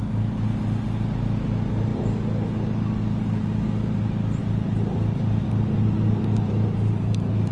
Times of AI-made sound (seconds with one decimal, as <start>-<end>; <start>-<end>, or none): none